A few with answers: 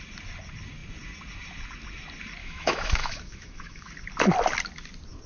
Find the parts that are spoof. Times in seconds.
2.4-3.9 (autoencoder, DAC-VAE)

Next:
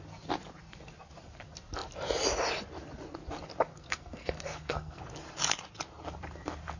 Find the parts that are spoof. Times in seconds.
3.7-5.0 (codec, SNAC)

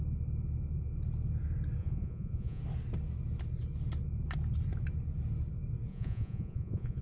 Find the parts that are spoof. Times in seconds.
1.8-2.6 (vocoder, Vocos); 5.9-7.0

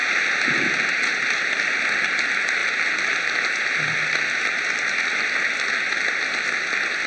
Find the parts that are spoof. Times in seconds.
0.0-1.1 (vocoder, BigVGAN v2)

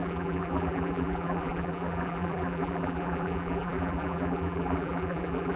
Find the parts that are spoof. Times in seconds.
0.0-5.6 (vocoder, BigVGAN v2)

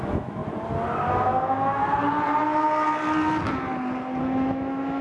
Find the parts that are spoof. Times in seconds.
0.0-0.4 (autoencoder, DAC-VAE); 1.1-1.8; 4.2-5.0